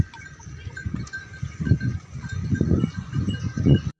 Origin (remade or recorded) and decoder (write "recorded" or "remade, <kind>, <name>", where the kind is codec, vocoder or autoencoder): remade, vocoder, Vocos